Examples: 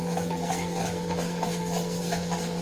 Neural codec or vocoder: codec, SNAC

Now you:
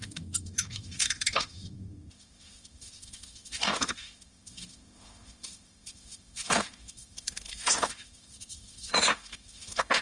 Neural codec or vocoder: autoencoder, DAC-VAE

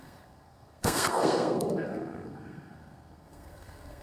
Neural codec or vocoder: codec, SNAC